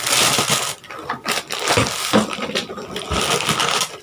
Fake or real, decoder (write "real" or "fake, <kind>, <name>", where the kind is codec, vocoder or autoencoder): real